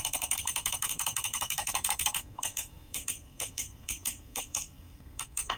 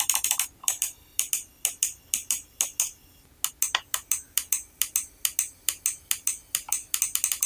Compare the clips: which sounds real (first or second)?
second